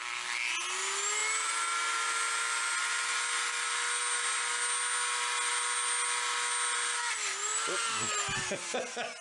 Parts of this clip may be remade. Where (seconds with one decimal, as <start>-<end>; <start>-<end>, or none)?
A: none